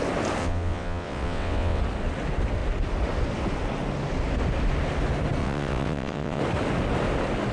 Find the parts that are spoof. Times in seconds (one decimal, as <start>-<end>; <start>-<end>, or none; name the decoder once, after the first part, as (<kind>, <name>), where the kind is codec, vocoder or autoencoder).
0.4-1.8 (vocoder, WaveNeXt); 5.4-6.4